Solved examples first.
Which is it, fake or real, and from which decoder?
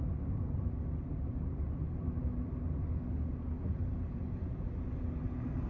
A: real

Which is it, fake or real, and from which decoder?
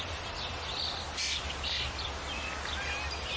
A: real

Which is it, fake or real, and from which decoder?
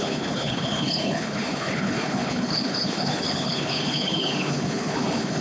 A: fake, codec, HILCodec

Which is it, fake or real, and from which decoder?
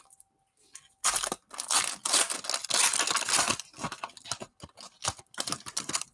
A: real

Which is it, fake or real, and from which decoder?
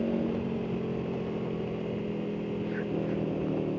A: real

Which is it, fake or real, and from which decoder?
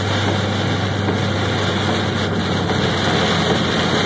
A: real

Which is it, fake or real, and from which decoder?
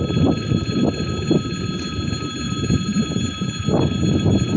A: real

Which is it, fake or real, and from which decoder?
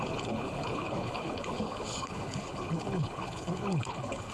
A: fake, codec, HILCodec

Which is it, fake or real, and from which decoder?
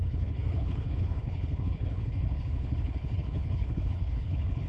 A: fake, codec, HILCodec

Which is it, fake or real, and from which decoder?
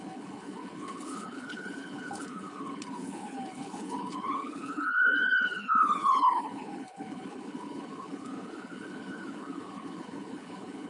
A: fake, codec, HILCodec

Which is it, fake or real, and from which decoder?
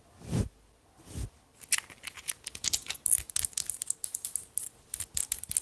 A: real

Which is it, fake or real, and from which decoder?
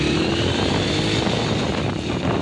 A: real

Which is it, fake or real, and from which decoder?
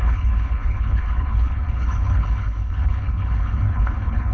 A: fake, codec, HILCodec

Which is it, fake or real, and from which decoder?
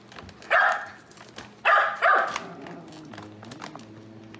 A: real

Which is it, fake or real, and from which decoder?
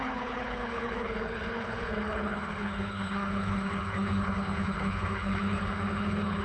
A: fake, codec, HILCodec